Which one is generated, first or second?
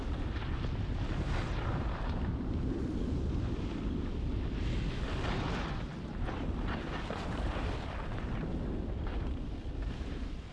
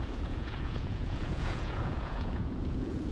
second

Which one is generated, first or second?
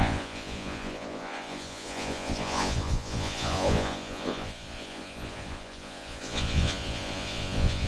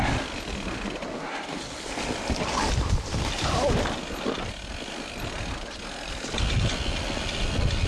first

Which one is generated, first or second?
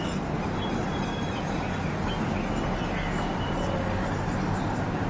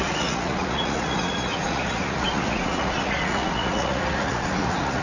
second